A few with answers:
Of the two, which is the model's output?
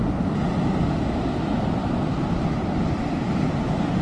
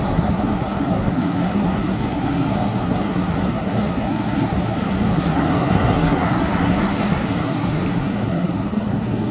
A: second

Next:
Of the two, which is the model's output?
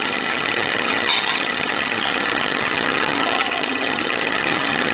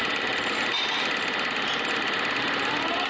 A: first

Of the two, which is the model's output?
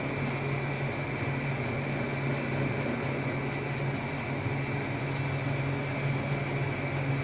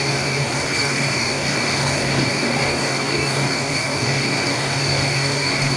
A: second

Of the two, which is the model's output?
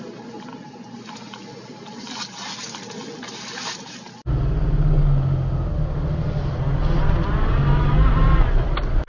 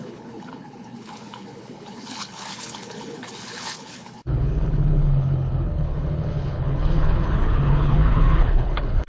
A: second